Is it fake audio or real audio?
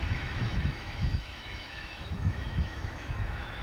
fake